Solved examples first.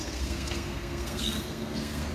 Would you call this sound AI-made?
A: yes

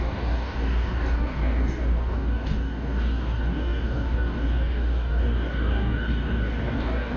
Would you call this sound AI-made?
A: yes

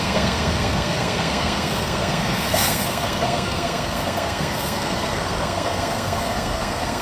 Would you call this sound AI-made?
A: yes